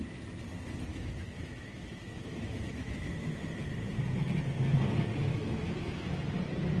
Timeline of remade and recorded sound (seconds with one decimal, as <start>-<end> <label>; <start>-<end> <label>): 0.0-0.9 recorded; 0.9-3.5 remade; 3.5-5.3 recorded; 5.3-6.0 remade; 6.0-6.8 recorded